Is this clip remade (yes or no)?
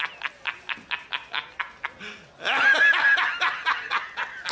no